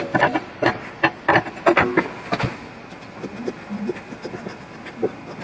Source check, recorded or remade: recorded